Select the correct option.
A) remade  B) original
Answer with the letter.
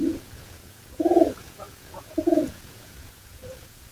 A